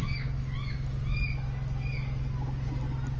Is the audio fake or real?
real